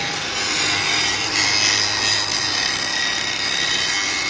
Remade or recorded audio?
recorded